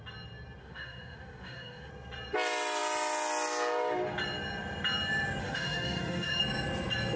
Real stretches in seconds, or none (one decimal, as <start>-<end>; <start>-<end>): 0.0-0.6; 1.9-5.4; 6.4-7.2